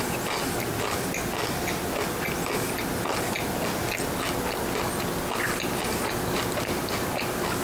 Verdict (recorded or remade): recorded